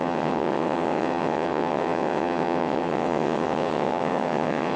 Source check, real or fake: fake